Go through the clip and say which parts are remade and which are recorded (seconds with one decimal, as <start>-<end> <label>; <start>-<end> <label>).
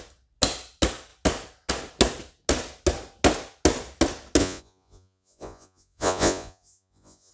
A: 0.0-4.4 recorded; 4.4-7.3 remade